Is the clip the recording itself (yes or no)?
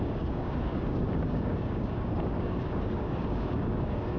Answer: no